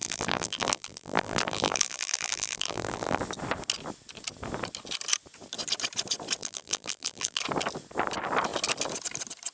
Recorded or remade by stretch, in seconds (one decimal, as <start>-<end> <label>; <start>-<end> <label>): 0.0-3.2 remade; 3.2-6.4 recorded; 6.4-7.4 remade; 7.4-9.5 recorded